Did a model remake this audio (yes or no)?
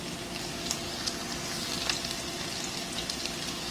no